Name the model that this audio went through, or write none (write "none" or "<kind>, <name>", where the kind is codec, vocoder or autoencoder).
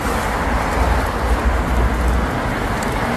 none